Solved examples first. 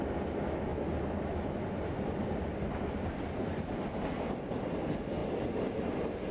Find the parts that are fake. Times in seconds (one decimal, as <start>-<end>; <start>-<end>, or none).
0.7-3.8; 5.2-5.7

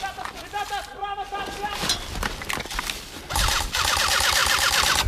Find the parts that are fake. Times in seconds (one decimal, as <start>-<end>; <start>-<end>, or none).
none

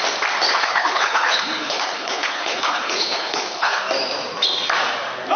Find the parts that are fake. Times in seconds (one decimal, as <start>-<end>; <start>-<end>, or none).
0.6-3.8

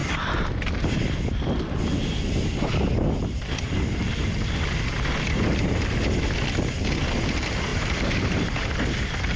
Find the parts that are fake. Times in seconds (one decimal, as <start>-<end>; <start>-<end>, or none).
7.7-8.7

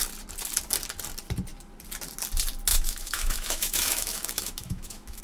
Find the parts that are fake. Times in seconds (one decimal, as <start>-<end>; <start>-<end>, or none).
2.7-5.2

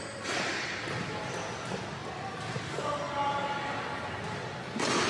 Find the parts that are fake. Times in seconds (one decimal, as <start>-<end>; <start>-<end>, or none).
none

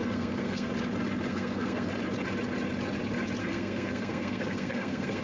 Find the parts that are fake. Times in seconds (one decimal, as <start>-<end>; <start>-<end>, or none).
0.0-0.7; 1.3-1.9; 3.4-5.2

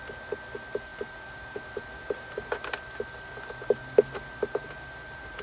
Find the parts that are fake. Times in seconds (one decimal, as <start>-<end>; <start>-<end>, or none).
none